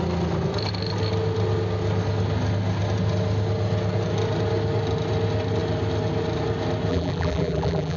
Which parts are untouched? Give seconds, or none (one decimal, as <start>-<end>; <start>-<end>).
0.0-6.9